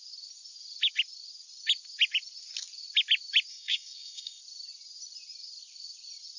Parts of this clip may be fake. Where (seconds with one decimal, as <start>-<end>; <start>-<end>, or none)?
3.5-4.4